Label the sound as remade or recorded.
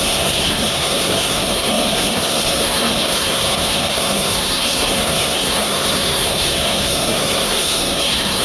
remade